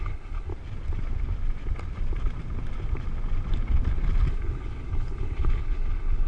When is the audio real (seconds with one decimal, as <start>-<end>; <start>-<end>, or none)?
0.5-4.3